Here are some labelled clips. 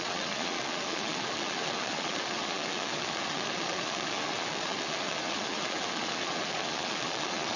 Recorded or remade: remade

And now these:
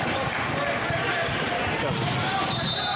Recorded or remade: recorded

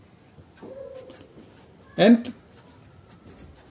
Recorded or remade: recorded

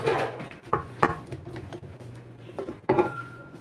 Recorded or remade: remade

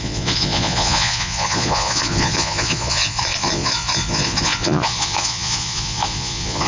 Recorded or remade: remade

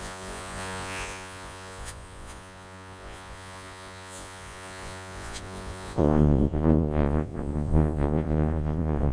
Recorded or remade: remade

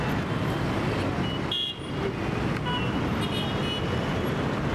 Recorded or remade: recorded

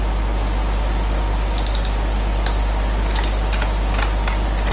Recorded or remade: recorded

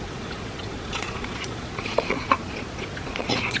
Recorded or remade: remade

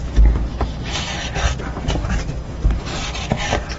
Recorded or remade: recorded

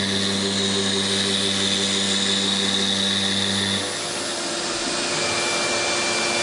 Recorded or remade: recorded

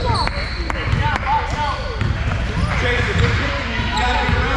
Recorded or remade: recorded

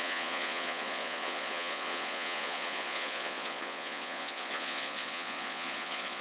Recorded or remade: remade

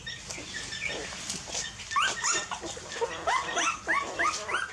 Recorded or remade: recorded